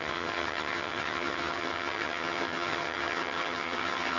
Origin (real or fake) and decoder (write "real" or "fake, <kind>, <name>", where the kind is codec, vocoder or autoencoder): fake, vocoder, HiFi-GAN